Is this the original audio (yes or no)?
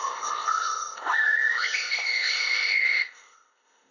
no